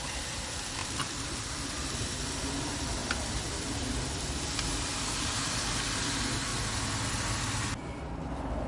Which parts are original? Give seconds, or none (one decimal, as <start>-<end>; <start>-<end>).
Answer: 3.0-3.8; 6.5-8.7